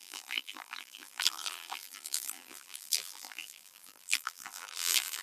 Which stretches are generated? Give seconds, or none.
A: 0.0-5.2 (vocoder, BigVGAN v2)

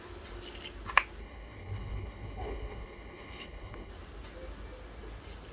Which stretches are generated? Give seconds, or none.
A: 1.2-3.9 (codec, HILCodec)

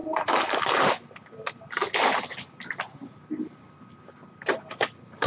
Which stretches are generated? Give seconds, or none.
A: none

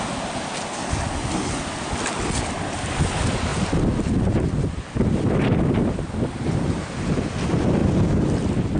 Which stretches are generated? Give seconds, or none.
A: 7.8-8.4 (vocoder, BigVGAN v2)

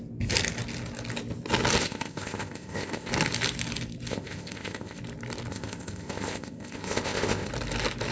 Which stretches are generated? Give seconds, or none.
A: 1.8-3.1 (codec, ZipCodec); 4.1-5.0; 5.5-7.5

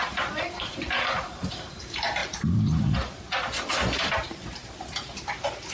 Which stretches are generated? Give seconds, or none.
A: 0.0-2.2 (vocoder, BigVGAN v2); 4.1-4.6

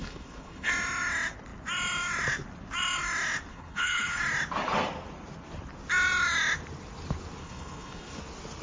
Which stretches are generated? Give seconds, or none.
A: 0.0-0.7 (codec, HILCodec); 3.5-4.2; 7.4-8.2

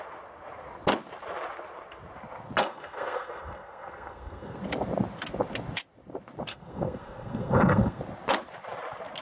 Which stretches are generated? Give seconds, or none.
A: 2.6-4.6 (codec, SNAC); 6.5-8.0